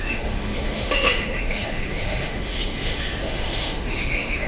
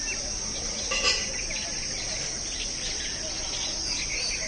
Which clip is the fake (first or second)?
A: first